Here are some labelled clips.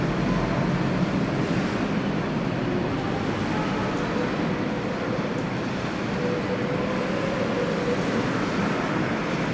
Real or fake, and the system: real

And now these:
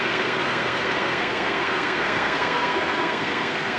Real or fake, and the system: fake, codec, SNAC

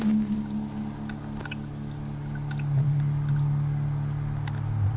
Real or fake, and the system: real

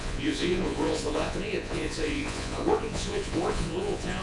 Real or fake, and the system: fake, vocoder, Vocos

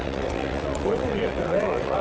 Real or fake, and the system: fake, vocoder, WaveNeXt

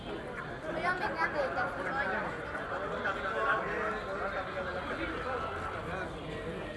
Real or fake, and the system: real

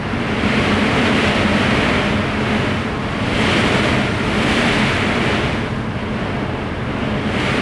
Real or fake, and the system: real